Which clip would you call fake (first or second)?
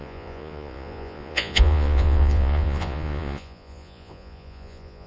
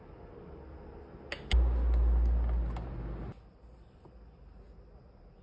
first